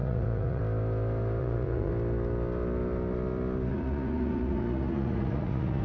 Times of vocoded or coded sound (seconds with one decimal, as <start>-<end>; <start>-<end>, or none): 0.0-0.6; 1.4-1.9; 3.7-5.8